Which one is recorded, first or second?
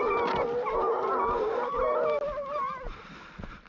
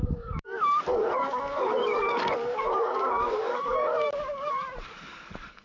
first